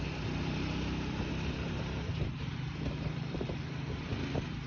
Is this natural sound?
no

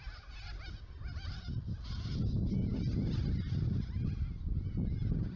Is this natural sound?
yes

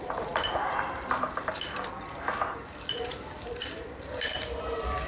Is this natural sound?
no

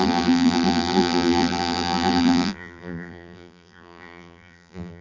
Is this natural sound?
no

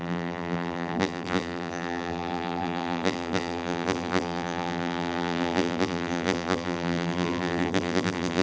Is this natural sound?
no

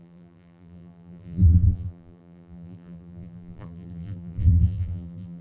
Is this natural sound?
no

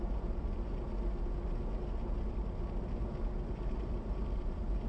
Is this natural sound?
yes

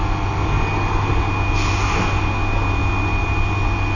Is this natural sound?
yes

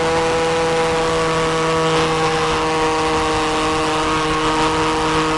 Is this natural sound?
yes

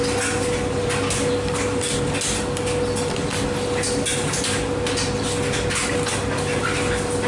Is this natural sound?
yes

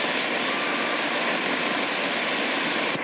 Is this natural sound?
yes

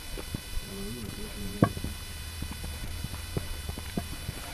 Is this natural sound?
no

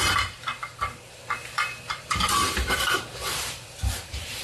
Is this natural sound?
no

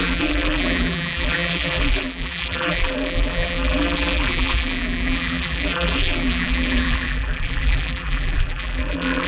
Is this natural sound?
no